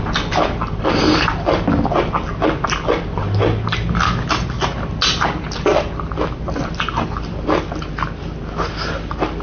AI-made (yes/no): no